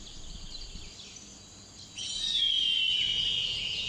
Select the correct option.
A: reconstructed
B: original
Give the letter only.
B